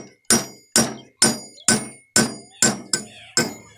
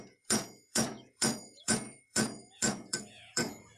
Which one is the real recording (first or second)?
first